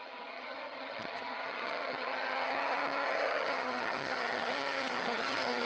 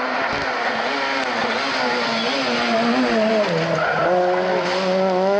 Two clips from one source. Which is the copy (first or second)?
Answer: first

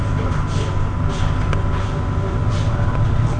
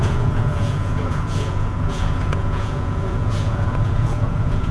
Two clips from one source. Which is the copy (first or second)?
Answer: second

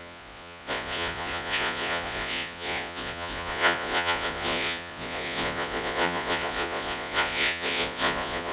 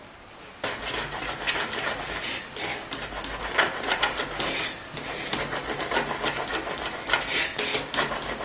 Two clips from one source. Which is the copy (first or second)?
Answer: first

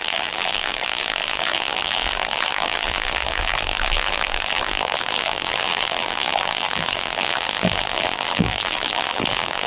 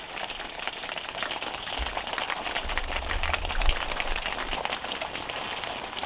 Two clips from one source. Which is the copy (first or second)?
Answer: first